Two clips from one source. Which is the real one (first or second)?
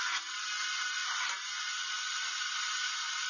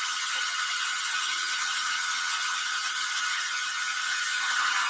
first